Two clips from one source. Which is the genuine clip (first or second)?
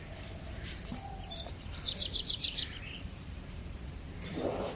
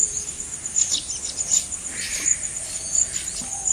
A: second